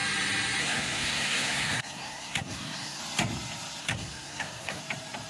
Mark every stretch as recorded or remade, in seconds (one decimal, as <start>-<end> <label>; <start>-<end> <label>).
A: 0.0-0.6 recorded; 0.6-3.0 remade; 3.0-3.8 recorded; 3.8-4.8 remade; 4.8-5.3 recorded